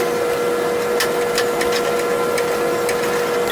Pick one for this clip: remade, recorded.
recorded